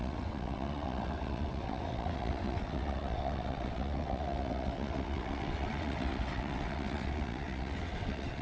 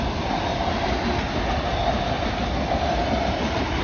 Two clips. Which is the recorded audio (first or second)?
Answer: second